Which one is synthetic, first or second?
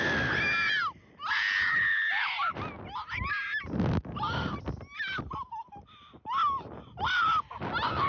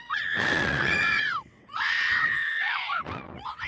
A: second